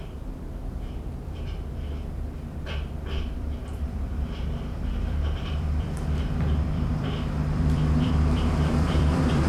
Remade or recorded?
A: remade